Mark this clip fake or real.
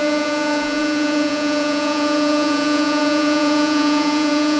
fake